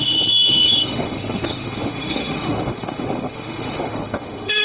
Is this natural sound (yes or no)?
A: no